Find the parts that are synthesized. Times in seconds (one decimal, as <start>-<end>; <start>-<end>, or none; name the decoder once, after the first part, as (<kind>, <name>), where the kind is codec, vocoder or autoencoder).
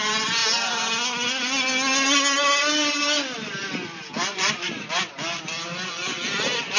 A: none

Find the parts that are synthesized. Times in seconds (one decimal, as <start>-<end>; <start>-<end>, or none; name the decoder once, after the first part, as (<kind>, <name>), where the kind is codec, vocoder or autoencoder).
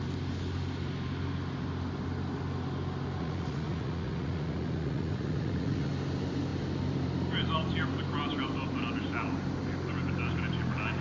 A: 3.2-5.9 (vocoder, Vocos)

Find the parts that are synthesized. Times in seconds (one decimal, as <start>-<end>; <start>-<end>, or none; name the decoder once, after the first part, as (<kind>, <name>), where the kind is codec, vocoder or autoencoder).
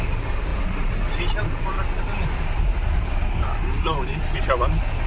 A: none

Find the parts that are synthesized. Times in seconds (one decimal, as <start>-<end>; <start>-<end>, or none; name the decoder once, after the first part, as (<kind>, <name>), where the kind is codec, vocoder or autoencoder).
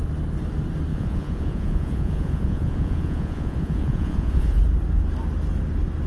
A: 0.9-4.6 (vocoder, Vocos)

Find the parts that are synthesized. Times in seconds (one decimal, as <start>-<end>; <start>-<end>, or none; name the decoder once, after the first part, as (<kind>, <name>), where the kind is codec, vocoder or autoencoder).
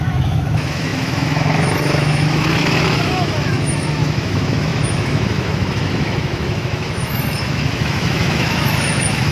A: 0.0-9.3 (autoencoder, DAC-VAE)